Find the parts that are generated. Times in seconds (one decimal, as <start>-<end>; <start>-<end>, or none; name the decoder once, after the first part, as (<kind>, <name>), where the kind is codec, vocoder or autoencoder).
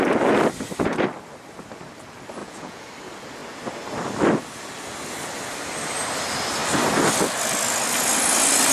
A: 2.4-2.9 (vocoder, Vocos)